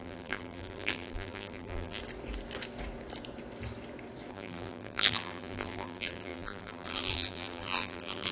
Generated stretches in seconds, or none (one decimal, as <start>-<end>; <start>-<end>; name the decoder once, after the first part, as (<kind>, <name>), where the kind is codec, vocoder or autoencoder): 0.0-2.0 (vocoder, BigVGAN v2); 4.3-8.3